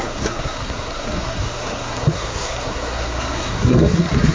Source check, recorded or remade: remade